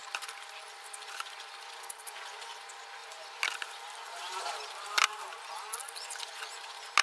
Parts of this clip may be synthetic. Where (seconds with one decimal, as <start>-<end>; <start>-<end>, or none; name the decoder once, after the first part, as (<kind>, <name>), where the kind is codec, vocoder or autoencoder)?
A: none

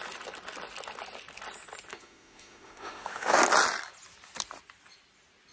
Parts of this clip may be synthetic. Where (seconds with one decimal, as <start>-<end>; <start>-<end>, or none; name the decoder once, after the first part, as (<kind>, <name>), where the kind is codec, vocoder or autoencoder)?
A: 1.9-3.4 (autoencoder, DAC-VAE)

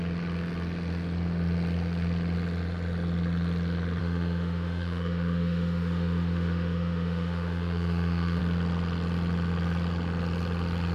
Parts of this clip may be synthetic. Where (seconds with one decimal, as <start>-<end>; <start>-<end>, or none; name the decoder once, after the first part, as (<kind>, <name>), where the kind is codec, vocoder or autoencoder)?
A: 4.0-8.4 (autoencoder, DAC-VAE)